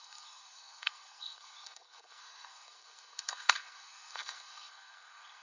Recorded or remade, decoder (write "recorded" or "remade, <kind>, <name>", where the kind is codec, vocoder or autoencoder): remade, codec, SNAC